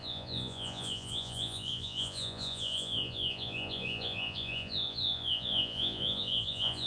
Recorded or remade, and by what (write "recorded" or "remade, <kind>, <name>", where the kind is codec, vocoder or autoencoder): remade, vocoder, Vocos